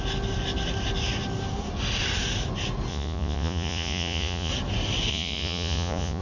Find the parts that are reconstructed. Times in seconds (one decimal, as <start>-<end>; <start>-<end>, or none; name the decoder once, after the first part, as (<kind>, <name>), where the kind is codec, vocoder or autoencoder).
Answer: 2.9-4.5 (vocoder, Vocos); 5.1-6.2